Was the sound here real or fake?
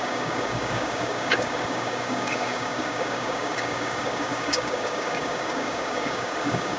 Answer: fake